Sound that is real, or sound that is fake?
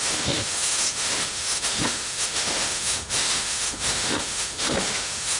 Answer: fake